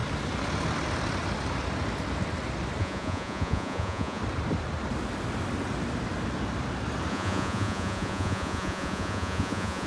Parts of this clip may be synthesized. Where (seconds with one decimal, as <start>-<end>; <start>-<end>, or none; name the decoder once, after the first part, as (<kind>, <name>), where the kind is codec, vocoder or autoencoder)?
2.8-4.2 (vocoder, Vocos); 7.1-9.9

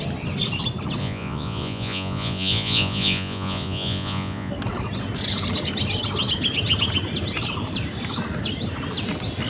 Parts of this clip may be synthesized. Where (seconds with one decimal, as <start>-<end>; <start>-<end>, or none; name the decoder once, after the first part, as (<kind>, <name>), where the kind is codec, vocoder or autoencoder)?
1.0-4.5 (vocoder, Vocos)

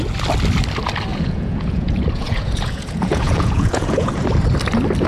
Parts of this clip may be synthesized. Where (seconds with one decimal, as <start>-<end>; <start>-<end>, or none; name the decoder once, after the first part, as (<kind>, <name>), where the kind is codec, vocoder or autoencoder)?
1.1-4.2 (vocoder, Vocos)

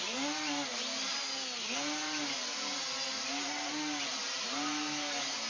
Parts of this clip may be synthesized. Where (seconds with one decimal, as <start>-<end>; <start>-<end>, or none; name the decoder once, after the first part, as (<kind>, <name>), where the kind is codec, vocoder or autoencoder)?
none